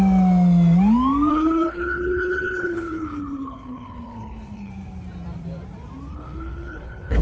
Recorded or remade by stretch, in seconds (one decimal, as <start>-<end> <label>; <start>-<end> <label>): 0.0-1.3 recorded; 1.3-4.7 remade; 4.7-6.1 recorded; 6.1-7.2 remade